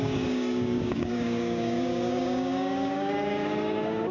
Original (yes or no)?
no